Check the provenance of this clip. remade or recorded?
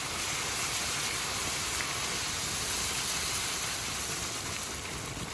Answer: recorded